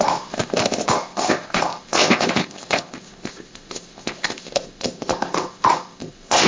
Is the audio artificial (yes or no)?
yes